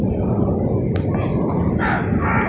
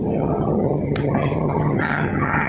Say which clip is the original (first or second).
first